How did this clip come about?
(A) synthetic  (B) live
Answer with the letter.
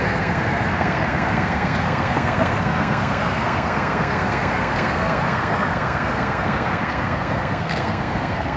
A